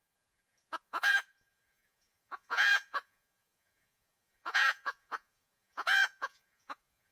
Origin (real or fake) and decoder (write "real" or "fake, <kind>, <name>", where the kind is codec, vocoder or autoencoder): fake, vocoder, Vocos